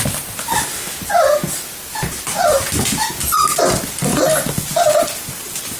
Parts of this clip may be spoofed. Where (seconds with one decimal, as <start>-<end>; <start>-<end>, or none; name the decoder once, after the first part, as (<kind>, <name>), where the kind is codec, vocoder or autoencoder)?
none